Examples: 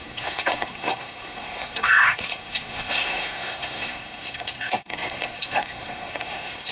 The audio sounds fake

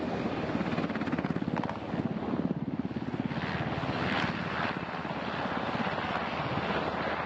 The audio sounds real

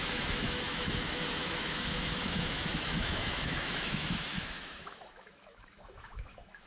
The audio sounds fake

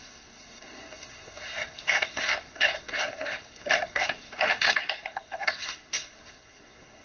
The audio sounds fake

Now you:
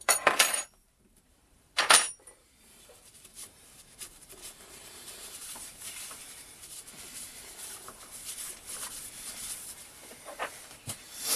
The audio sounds fake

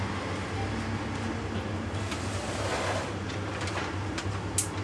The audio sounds real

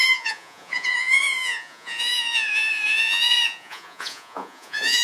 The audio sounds fake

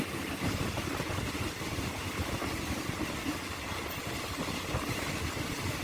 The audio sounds real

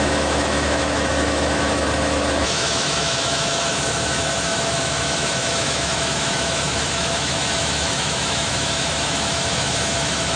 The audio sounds fake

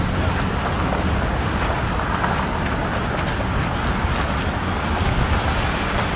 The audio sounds real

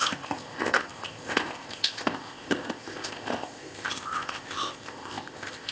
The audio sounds fake